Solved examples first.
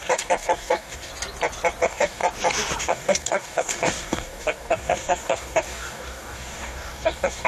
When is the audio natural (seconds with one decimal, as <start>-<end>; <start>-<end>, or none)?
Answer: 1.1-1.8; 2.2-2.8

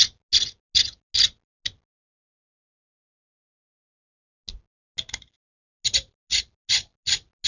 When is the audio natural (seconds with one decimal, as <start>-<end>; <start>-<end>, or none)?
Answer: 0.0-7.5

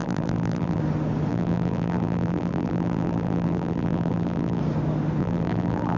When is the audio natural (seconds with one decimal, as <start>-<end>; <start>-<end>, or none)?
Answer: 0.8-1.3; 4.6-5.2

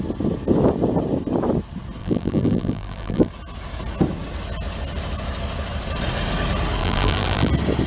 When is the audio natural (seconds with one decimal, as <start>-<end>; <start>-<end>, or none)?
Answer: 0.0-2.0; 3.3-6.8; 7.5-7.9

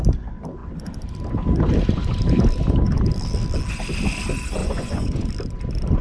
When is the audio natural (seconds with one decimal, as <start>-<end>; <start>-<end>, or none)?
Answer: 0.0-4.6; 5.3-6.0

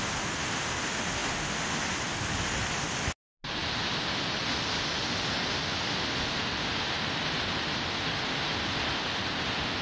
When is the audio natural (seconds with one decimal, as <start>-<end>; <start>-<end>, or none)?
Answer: 0.0-9.8

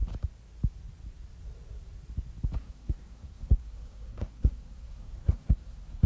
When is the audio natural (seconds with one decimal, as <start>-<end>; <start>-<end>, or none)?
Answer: 0.0-2.6